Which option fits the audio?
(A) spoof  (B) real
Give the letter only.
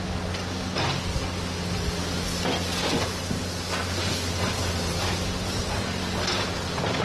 B